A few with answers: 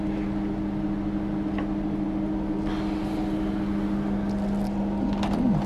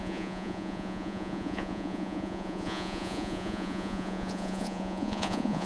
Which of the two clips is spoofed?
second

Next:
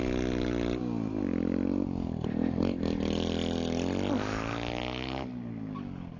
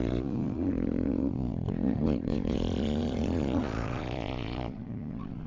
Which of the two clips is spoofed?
second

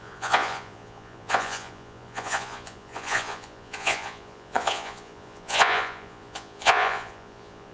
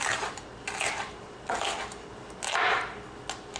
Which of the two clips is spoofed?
first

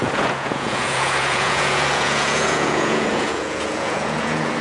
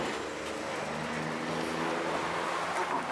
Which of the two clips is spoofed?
first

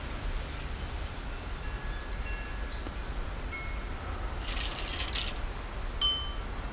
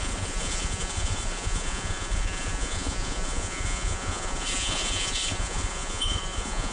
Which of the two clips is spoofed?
second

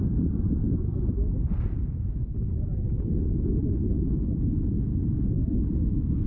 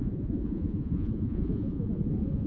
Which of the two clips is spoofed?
second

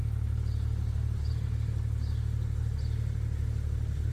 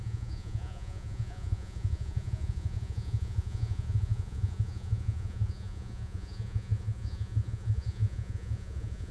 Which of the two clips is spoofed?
second